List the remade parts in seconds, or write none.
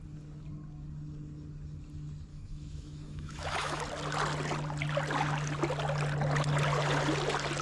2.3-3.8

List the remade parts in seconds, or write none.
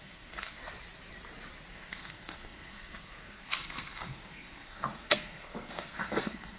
0.0-0.6; 1.7-6.6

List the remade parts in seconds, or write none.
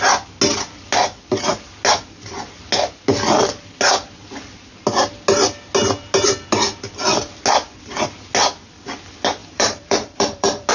9.4-10.7